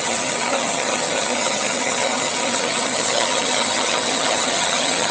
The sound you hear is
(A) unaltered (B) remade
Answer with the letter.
B